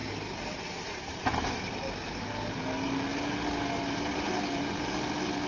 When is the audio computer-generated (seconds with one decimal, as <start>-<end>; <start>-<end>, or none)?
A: none